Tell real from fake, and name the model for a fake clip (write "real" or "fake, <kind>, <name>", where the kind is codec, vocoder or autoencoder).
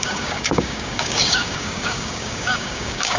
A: fake, codec, DAC